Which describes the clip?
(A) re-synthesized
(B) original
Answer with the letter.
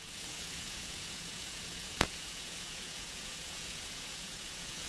A